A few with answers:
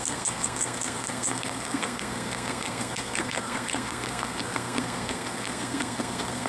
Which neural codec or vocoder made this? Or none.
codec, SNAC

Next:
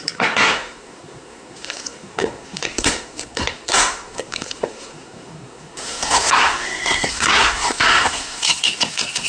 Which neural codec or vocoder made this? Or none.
codec, SNAC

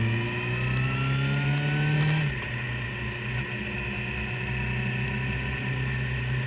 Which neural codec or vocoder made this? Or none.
none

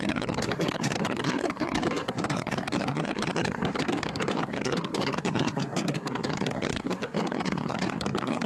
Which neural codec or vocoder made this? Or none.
codec, SNAC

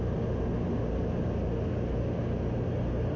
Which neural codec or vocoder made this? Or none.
none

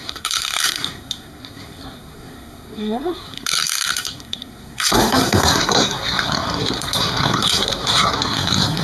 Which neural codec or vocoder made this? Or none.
codec, SNAC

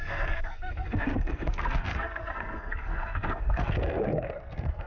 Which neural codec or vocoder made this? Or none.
codec, SNAC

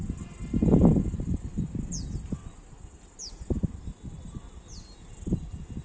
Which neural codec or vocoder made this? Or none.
none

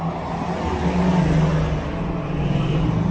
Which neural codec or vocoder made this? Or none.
none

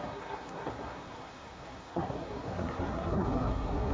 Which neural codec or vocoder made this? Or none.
codec, SNAC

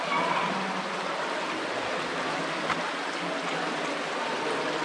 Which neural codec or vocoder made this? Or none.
none